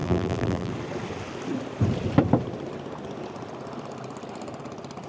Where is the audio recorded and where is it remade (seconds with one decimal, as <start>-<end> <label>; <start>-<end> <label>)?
0.0-0.7 remade; 0.7-5.1 recorded